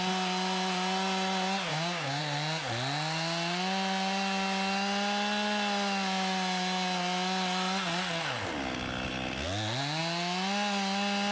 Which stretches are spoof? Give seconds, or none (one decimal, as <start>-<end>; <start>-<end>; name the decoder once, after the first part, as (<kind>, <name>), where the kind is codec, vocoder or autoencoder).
1.7-2.2 (codec, DAC)